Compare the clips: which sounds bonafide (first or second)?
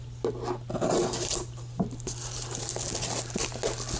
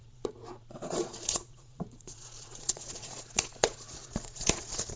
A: first